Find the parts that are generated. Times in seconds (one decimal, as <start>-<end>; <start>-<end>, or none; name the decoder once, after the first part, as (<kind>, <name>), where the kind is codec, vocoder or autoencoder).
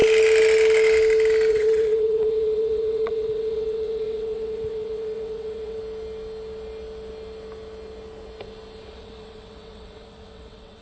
1.5-5.8 (vocoder, WaveNeXt); 8.9-10.8